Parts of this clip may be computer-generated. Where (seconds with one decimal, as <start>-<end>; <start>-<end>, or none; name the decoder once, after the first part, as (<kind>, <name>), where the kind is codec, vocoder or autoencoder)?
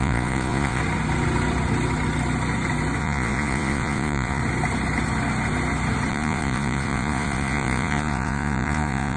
0.0-0.8 (vocoder, Vocos); 3.0-4.4; 6.1-9.2